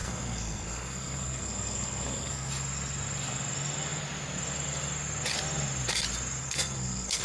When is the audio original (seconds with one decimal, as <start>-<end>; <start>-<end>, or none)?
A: 2.5-6.4